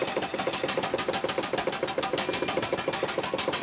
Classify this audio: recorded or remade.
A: recorded